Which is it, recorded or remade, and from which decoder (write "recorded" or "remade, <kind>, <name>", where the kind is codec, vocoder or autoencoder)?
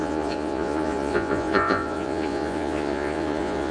remade, vocoder, Vocos